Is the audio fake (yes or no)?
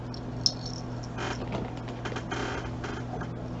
no